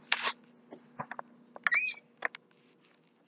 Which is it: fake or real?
real